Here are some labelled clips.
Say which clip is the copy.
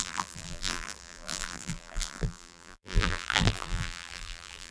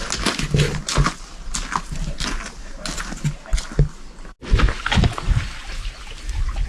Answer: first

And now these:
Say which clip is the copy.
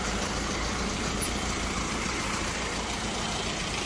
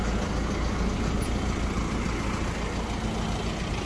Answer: first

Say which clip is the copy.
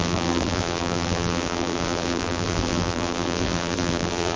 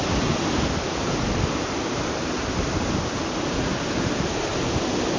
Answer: first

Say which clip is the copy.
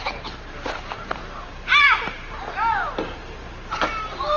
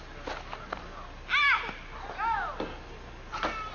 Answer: first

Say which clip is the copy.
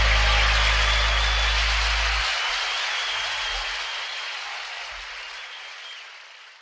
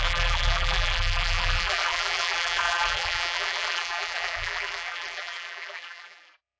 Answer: second